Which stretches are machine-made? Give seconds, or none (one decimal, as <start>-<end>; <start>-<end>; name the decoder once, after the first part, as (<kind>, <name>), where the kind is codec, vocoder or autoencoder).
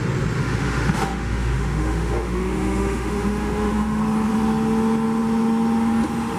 0.4-4.0 (autoencoder, DAC-VAE)